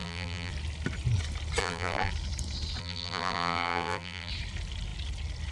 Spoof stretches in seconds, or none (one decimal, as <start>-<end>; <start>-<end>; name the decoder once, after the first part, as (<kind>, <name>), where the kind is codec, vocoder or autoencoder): 0.0-0.5 (vocoder, BigVGAN v2); 1.6-2.1; 2.8-4.3